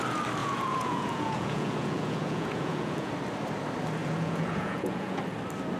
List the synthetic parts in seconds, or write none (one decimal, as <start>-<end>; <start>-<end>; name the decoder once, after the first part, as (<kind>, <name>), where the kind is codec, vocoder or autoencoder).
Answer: 0.4-3.1 (vocoder, Vocos); 4.0-5.2